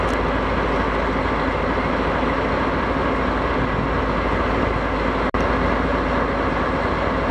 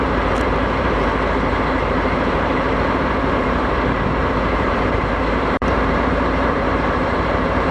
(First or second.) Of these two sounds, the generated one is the second